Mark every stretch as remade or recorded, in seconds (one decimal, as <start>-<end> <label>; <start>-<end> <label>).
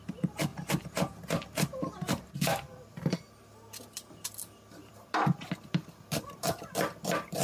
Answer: 0.0-7.4 recorded